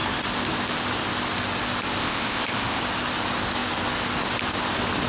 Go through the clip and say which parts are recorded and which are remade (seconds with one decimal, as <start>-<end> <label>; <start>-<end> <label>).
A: 0.0-2.0 recorded; 2.0-2.8 remade; 2.8-5.1 recorded